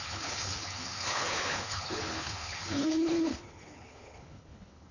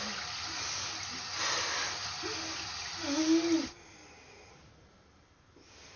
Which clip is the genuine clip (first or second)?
second